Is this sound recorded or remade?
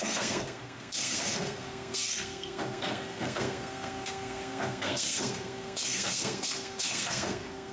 remade